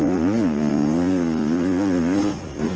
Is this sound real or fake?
fake